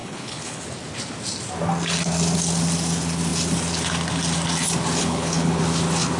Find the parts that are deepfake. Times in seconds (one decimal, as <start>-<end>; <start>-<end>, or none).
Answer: 0.0-0.6; 5.0-5.6